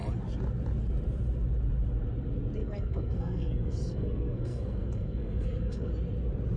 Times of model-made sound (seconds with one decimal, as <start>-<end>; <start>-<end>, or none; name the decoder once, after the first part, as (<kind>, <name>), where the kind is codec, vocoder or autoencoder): 2.6-5.9 (codec, SNAC)